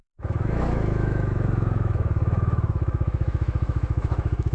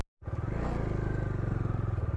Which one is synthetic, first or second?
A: first